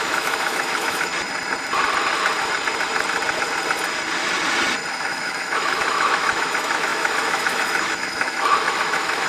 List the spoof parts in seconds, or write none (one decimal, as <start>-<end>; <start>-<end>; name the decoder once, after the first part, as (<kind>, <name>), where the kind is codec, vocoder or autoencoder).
0.0-1.1 (autoencoder, DAC-VAE); 4.9-9.3